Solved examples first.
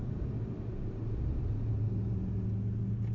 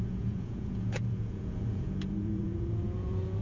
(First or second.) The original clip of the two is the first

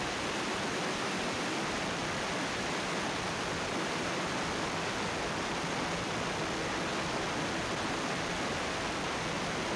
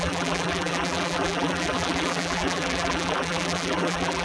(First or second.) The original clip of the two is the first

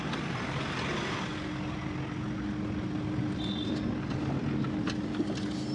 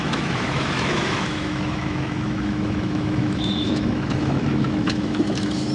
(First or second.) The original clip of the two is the first